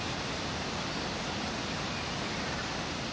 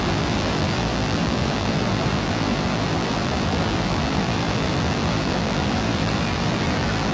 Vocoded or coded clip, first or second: second